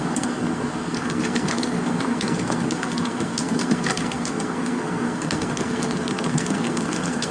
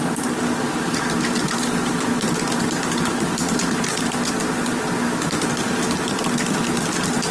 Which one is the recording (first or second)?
second